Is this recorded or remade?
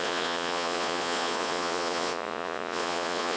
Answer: remade